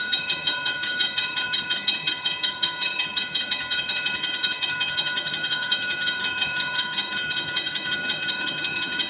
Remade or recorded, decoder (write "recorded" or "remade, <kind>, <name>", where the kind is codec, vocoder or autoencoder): remade, vocoder, HiFi-GAN